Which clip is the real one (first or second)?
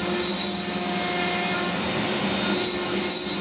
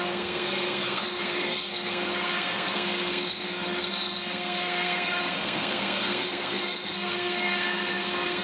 first